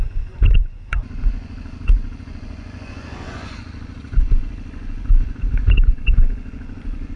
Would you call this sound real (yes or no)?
no